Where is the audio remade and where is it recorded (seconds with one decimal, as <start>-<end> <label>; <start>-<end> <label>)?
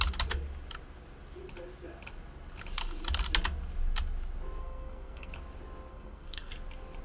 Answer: 0.0-4.6 recorded; 4.6-5.3 remade; 5.3-5.9 recorded; 5.9-6.5 remade; 6.5-7.0 recorded